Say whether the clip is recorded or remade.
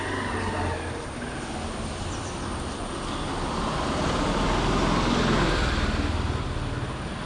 recorded